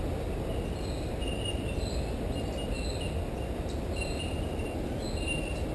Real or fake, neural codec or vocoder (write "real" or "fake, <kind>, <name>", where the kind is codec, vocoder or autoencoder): real